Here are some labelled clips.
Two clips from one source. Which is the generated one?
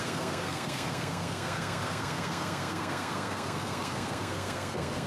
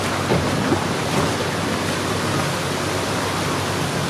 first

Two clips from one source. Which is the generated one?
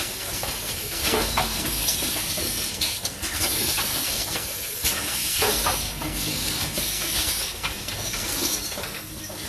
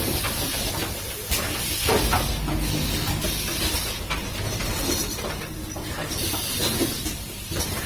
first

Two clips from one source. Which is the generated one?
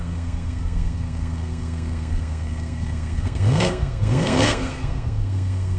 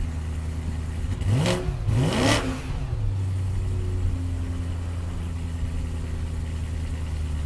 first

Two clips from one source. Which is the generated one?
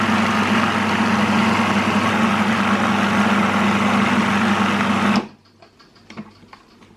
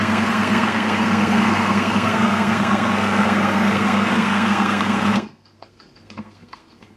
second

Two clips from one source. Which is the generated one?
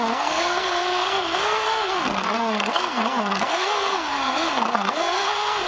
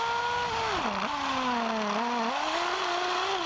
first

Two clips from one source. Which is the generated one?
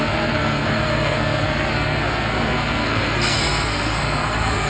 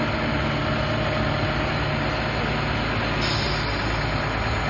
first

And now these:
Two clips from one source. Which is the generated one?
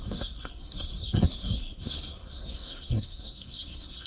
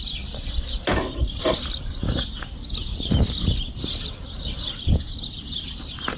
first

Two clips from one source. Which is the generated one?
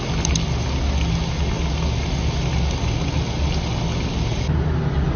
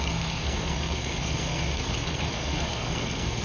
second